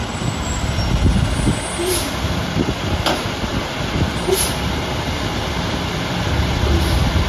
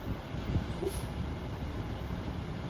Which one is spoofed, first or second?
second